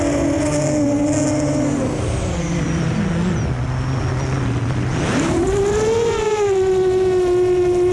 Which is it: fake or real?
real